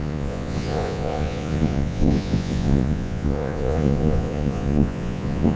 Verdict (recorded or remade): remade